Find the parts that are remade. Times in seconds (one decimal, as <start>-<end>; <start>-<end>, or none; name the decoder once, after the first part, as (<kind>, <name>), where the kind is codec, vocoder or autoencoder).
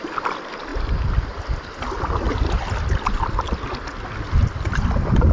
none